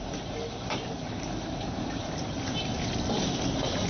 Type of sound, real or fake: real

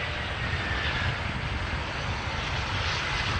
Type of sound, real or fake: real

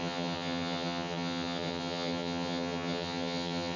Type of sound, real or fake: fake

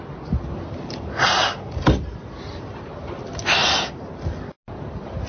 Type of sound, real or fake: real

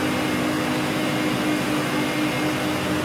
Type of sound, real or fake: real